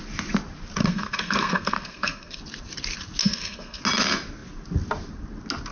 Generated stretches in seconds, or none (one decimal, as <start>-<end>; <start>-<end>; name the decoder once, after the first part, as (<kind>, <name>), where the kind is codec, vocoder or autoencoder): 0.8-2.4 (codec, SNAC); 3.2-3.8